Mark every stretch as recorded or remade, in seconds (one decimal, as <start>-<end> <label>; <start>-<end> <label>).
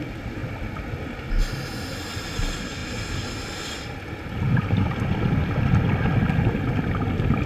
0.0-7.5 recorded